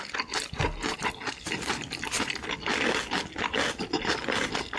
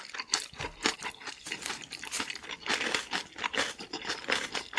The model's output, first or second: second